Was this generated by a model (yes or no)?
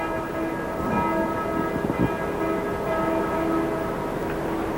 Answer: no